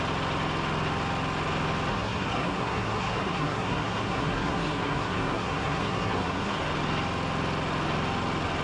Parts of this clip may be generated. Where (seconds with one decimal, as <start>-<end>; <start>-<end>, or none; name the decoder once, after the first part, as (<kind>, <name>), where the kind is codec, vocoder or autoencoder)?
1.9-6.6 (codec, SNAC)